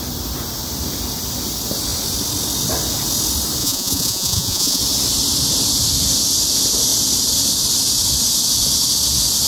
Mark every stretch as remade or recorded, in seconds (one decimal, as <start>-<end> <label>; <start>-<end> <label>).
0.0-3.6 recorded; 3.6-4.8 remade; 4.8-9.5 recorded